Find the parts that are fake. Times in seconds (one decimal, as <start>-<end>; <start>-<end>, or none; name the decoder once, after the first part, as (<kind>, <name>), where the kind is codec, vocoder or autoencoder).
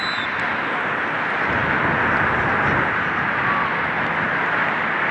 none